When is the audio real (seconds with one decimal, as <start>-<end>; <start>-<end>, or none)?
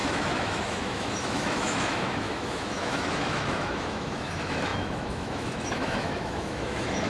none